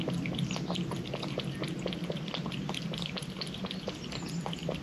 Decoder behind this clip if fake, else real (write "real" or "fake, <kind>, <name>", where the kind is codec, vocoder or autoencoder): real